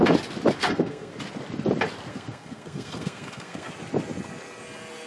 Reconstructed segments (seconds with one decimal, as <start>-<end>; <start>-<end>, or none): 0.6-1.1; 2.1-3.7